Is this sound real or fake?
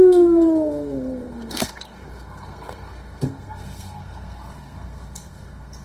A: fake